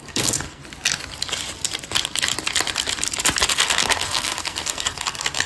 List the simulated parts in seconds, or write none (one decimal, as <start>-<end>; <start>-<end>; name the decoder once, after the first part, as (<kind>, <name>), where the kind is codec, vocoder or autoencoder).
0.0-0.6 (codec, SNAC); 3.5-5.5